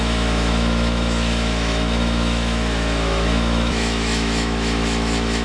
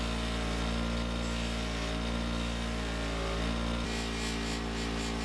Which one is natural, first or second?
second